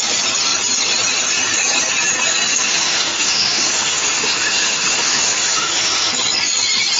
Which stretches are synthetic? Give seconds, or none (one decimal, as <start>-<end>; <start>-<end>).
2.5-6.1